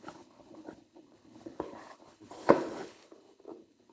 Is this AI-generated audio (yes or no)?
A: yes